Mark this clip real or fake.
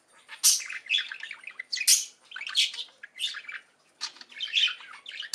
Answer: real